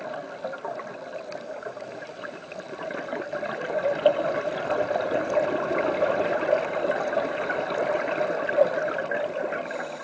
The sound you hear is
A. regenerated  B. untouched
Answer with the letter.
B